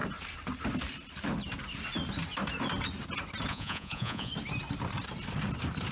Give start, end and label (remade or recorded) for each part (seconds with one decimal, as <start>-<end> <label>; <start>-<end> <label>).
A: 0.0-3.5 recorded; 3.5-4.3 remade; 4.3-5.9 recorded